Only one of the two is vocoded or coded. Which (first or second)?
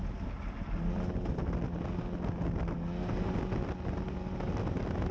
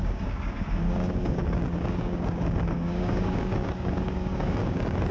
second